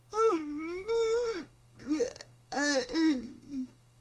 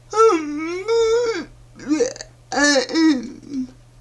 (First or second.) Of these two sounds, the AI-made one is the first